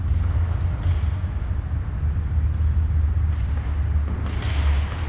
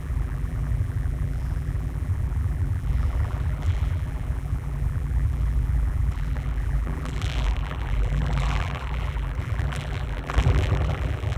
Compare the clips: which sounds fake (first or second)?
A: second